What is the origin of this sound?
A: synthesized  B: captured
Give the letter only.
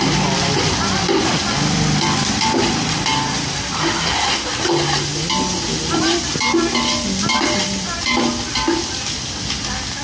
B